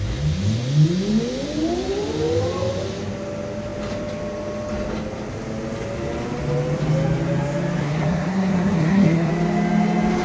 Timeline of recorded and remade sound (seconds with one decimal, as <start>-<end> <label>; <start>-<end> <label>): 0.0-7.8 recorded; 7.8-9.3 remade; 9.3-10.2 recorded